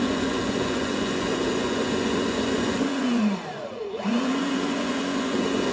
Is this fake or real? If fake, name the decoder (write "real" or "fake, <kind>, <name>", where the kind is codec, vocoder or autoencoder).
fake, vocoder, Vocos